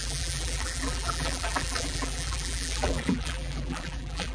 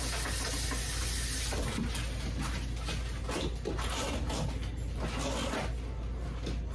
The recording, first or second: second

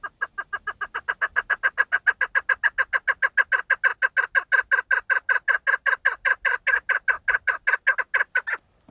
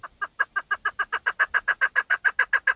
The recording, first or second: first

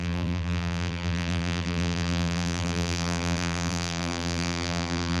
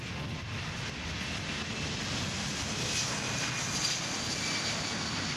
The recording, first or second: second